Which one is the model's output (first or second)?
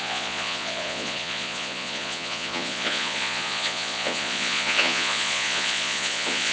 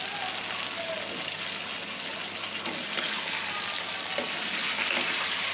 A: first